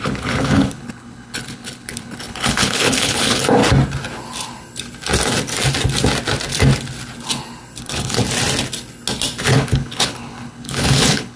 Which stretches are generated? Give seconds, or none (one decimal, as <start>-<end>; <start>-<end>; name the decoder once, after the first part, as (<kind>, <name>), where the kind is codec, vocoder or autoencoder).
0.0-3.6 (codec, HILCodec); 7.8-8.2; 9.4-11.4